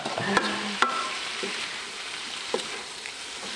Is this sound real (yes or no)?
no